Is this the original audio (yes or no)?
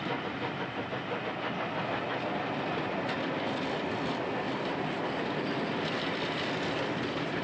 yes